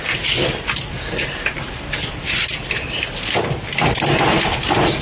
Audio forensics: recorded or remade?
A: recorded